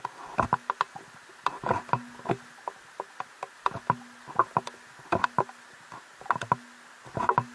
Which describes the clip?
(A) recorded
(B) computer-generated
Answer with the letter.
A